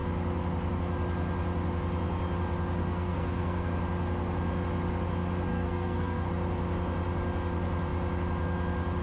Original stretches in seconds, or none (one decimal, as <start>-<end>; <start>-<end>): 0.0-2.8; 3.7-5.5; 6.3-9.0